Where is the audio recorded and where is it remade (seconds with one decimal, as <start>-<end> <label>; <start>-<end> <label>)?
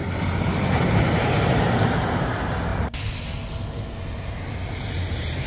0.0-2.7 remade; 2.7-4.3 recorded; 4.3-5.5 remade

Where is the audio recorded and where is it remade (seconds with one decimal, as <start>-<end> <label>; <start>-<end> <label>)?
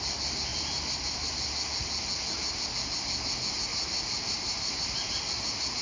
0.0-0.5 recorded; 0.5-1.3 remade; 1.3-3.7 recorded; 3.7-5.8 remade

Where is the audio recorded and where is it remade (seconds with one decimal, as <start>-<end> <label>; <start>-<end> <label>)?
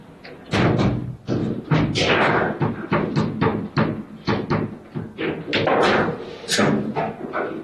0.0-5.8 recorded; 5.8-6.9 remade; 6.9-7.6 recorded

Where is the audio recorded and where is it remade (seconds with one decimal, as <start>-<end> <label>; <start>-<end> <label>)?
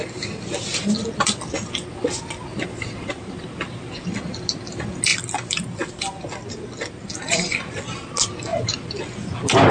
0.0-2.5 recorded; 2.5-3.6 remade; 3.6-8.5 recorded; 8.5-9.0 remade; 9.0-9.7 recorded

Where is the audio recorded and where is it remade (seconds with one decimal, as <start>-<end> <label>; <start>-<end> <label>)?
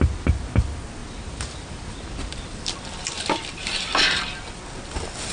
0.0-1.0 recorded; 1.0-4.2 remade; 4.2-5.3 recorded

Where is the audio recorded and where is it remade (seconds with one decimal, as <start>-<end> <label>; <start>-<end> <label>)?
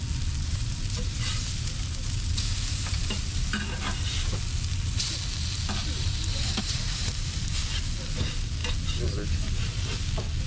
0.0-0.5 recorded; 0.5-4.4 remade; 4.4-5.8 recorded; 5.8-7.5 remade; 7.5-10.5 recorded